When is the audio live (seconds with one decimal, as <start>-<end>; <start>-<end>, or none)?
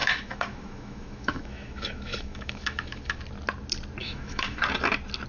3.2-4.0; 4.6-5.3